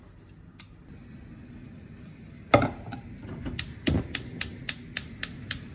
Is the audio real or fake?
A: real